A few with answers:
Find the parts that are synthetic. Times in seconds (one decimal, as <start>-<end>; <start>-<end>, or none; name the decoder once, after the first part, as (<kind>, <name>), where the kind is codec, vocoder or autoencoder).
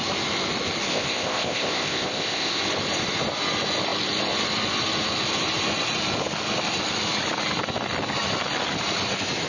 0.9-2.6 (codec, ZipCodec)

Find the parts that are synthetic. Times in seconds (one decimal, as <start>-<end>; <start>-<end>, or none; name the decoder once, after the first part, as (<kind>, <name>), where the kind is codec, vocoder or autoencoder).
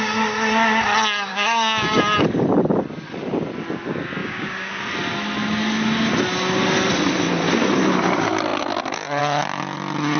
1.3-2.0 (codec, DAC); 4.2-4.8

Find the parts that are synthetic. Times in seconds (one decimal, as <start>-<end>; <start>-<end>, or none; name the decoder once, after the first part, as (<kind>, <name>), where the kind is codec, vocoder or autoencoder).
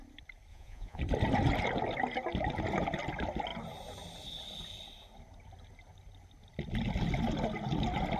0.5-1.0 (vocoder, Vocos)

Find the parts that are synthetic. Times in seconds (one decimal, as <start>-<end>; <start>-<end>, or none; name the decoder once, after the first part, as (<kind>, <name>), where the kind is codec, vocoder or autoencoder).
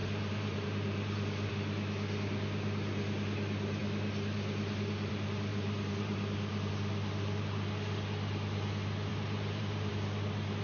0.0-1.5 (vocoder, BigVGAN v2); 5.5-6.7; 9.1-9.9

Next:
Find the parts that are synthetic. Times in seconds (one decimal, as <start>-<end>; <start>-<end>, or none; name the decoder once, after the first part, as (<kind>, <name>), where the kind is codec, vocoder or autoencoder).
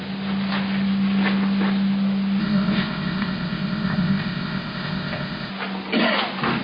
2.4-5.5 (codec, ZipCodec)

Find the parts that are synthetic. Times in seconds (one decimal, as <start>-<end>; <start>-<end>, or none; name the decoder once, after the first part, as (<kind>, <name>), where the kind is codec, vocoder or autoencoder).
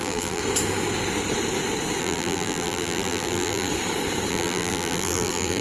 0.0-0.4 (vocoder, BigVGAN v2); 2.0-3.7; 4.3-5.6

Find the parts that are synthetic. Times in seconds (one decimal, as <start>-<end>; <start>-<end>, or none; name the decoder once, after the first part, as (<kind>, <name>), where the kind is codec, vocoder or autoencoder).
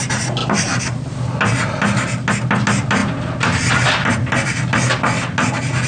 none